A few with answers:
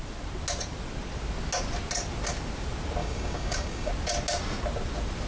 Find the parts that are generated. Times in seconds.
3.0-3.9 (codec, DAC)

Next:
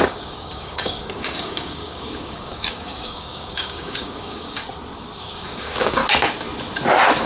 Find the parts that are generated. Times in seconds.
0.0-4.6 (codec, DAC); 5.2-6.0

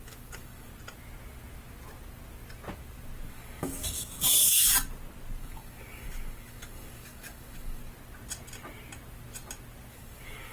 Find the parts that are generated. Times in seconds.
0.0-0.7 (codec, DAC); 3.3-4.7; 5.4-7.8; 9.9-10.5

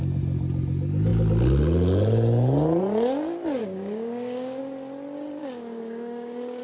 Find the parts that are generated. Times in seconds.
3.6-4.6 (codec, DAC); 5.4-6.6

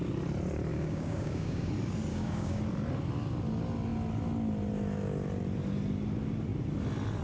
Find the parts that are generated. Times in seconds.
0.7-1.7 (codec, DAC); 2.1-2.6

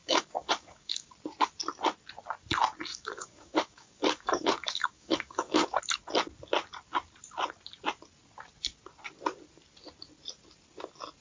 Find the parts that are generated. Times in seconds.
0.0-1.1 (codec, DAC); 2.9-5.8

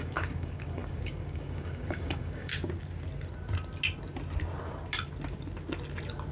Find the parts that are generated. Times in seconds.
0.0-2.5 (codec, DAC)

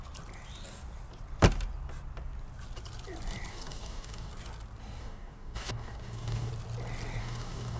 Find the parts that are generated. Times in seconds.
3.5-4.3 (codec, DAC); 5.0-6.5; 7.2-7.8